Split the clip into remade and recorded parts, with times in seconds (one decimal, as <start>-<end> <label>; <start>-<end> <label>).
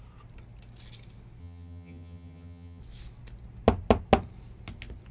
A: 0.0-1.4 recorded; 1.4-2.8 remade; 2.8-5.1 recorded